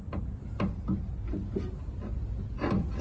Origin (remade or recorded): recorded